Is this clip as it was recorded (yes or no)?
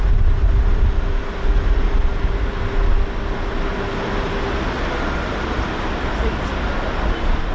yes